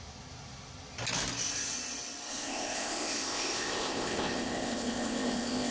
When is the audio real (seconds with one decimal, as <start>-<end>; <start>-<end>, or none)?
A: 0.0-2.3